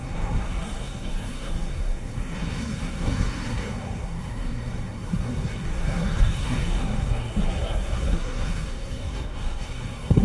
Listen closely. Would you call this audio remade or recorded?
remade